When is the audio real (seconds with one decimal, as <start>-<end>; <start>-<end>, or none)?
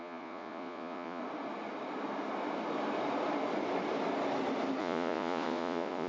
1.2-4.8